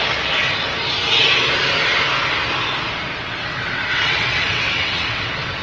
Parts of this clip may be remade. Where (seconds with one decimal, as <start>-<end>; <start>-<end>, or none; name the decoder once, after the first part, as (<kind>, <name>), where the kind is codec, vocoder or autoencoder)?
3.1-5.6 (vocoder, WaveNeXt)